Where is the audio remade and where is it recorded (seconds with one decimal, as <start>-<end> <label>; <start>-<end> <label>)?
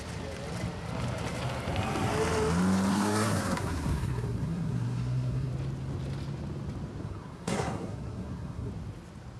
0.0-2.9 recorded; 2.9-5.5 remade; 5.5-7.0 recorded; 7.0-8.7 remade; 8.7-9.4 recorded